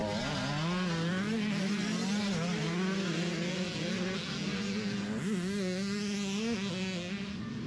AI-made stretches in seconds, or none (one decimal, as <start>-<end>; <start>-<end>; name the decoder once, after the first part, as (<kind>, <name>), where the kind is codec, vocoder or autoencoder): none